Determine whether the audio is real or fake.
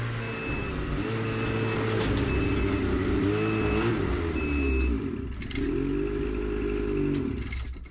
real